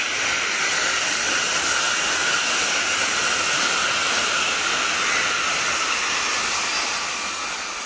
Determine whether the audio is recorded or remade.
recorded